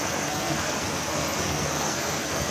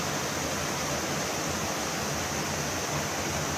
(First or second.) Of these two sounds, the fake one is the first